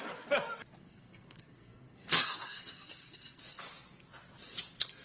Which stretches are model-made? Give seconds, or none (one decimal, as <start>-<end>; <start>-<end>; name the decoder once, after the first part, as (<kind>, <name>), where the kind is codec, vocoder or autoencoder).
0.8-3.4 (codec, SNAC)